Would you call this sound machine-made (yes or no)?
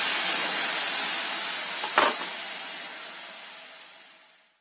no